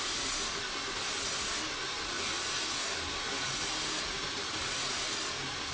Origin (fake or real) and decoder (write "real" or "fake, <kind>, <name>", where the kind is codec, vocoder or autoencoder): real